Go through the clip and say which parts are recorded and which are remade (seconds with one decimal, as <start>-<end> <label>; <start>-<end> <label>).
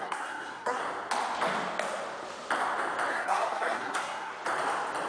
0.0-0.8 remade; 0.8-3.1 recorded; 3.1-4.3 remade; 4.3-5.1 recorded